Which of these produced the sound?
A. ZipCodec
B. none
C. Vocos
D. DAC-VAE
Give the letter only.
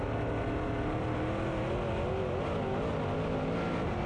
B